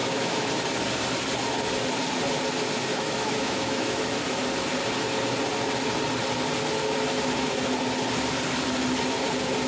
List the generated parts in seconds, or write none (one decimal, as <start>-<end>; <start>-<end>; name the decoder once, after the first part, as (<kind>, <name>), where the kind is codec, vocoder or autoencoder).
0.0-0.5 (autoencoder, DAC-VAE); 2.9-4.0